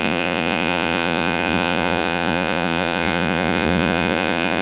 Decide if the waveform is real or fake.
fake